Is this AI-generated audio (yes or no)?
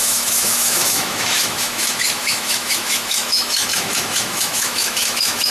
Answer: yes